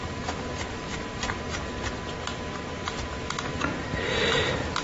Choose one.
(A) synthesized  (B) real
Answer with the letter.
B